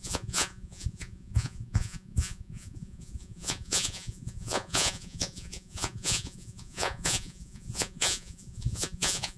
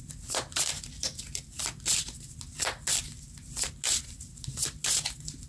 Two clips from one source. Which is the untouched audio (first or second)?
second